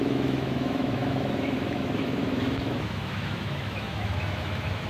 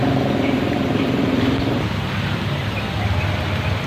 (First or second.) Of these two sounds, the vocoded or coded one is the first